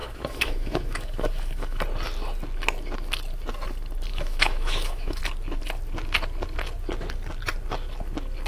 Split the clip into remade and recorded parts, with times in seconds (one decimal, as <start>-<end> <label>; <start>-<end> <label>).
0.0-1.8 remade; 1.8-4.1 recorded; 4.1-5.2 remade; 5.2-8.5 recorded